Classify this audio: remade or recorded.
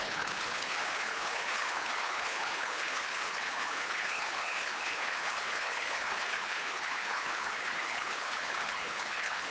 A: remade